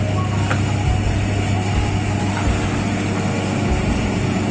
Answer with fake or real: real